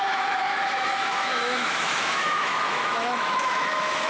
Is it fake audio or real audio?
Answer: fake